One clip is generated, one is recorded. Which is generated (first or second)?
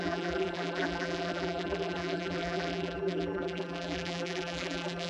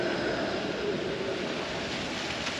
first